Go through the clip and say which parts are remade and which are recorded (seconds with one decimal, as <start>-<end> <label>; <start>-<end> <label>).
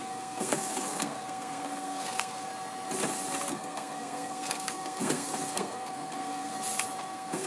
0.0-2.5 remade; 2.5-3.5 recorded; 3.5-6.5 remade; 6.5-7.0 recorded; 7.0-7.5 remade